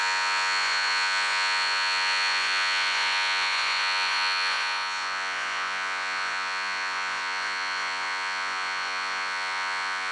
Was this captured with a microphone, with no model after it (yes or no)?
no